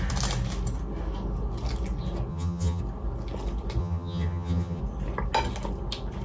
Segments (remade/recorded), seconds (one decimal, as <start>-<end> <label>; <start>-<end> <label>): 0.0-2.3 recorded; 2.3-2.8 remade; 2.8-3.8 recorded; 3.8-4.8 remade; 4.8-6.2 recorded